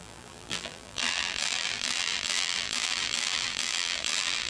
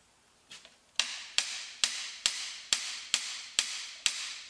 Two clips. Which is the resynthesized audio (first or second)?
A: first